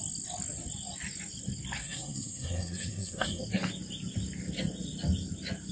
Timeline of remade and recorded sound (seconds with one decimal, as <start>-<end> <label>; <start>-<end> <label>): 0.0-1.8 recorded; 1.8-3.4 remade; 3.4-5.7 recorded